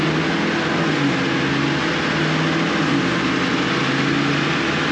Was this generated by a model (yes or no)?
no